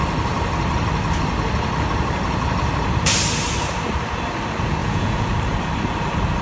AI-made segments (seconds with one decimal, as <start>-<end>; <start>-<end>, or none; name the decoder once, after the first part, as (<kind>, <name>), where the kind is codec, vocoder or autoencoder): 4.8-5.3 (vocoder, Vocos)